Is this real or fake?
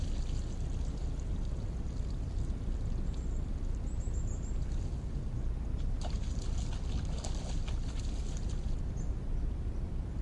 real